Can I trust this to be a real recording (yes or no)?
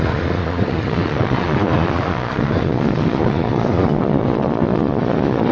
no